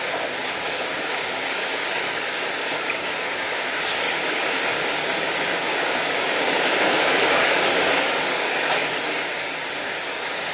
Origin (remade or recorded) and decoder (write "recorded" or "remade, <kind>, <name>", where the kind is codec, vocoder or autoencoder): remade, codec, DAC